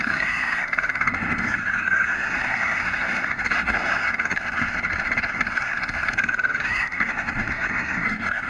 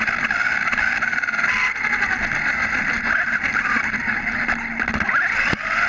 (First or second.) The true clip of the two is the second